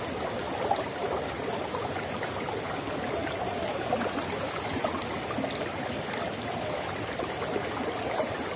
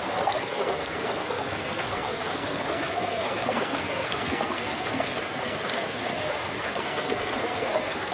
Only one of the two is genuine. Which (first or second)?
first